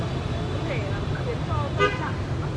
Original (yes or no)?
yes